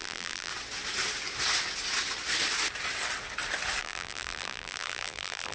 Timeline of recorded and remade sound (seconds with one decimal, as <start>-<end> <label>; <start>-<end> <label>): 0.0-0.5 remade; 0.5-3.8 recorded; 3.8-5.5 remade